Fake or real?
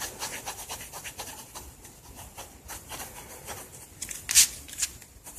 real